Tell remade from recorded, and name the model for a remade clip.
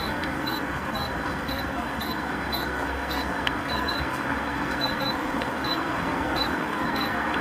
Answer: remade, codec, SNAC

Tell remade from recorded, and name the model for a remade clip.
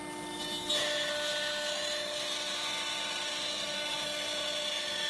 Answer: recorded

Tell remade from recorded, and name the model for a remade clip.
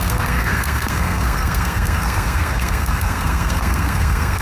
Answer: remade, codec, SNAC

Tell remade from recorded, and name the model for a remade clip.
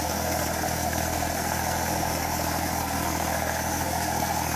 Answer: remade, codec, SNAC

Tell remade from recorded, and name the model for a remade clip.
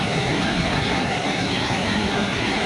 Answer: remade, codec, SNAC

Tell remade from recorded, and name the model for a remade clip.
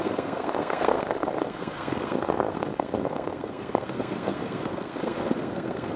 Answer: remade, codec, SNAC